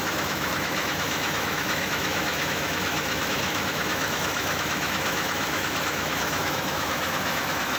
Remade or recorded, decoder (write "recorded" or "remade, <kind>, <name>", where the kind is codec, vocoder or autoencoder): remade, autoencoder, DAC-VAE